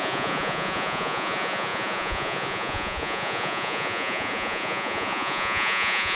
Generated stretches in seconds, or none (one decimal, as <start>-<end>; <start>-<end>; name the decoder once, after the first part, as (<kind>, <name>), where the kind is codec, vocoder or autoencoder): 0.0-6.2 (vocoder, Vocos)